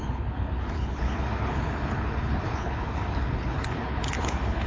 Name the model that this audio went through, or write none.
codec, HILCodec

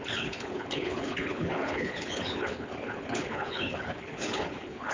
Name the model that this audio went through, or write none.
codec, HILCodec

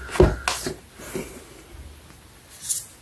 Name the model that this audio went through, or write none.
none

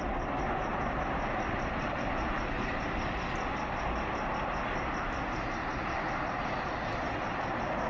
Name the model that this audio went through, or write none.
none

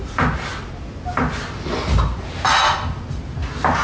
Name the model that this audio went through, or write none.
none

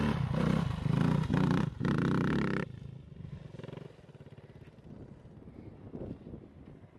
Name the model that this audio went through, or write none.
none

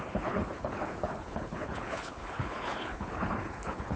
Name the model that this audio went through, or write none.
codec, HILCodec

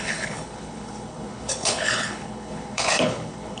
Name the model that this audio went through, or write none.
codec, HILCodec